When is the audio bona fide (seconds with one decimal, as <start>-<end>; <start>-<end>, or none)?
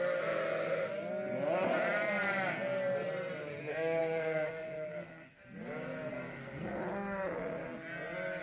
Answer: 0.0-4.0; 5.4-6.1; 6.8-8.4